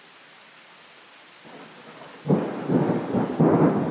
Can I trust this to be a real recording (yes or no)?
yes